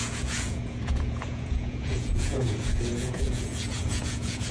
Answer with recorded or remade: remade